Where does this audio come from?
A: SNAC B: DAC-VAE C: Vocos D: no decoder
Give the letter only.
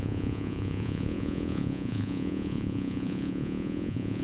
C